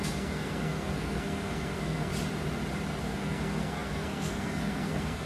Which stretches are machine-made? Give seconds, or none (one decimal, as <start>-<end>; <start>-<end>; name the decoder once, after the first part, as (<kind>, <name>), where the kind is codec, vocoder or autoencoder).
0.0-2.1 (codec, SNAC); 3.0-5.3